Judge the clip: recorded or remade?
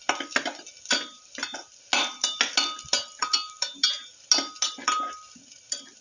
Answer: recorded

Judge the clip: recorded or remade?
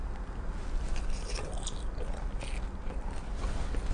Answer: recorded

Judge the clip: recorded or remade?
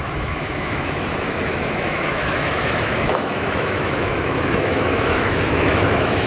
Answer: remade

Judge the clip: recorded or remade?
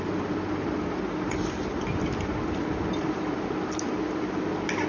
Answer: recorded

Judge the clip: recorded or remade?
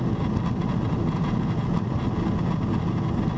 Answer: recorded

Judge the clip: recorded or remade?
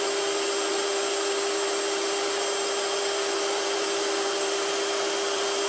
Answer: recorded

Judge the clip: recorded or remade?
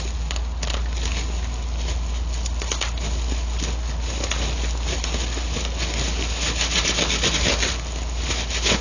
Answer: recorded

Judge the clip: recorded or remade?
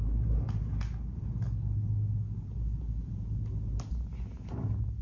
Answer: recorded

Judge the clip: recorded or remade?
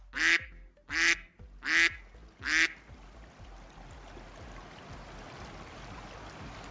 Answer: recorded